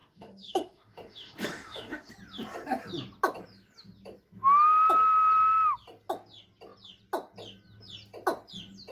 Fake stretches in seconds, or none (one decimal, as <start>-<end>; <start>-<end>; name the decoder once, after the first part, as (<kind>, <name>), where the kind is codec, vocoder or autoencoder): 0.0-2.1 (autoencoder, DAC-VAE)